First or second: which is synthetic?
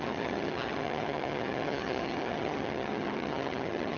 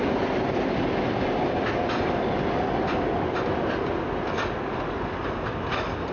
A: first